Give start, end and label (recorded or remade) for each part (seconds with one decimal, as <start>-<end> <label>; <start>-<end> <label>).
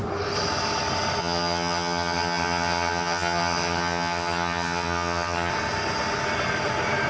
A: 0.0-1.2 recorded; 1.2-5.5 remade; 5.5-7.1 recorded